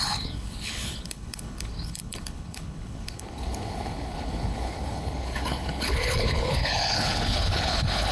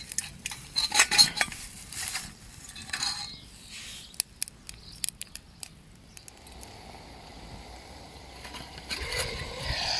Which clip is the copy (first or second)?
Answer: first